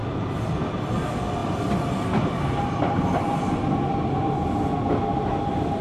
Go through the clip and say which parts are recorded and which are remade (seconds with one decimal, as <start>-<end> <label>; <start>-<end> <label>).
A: 0.0-5.8 recorded